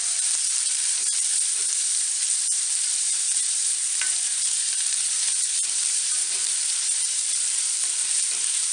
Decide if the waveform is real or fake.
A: fake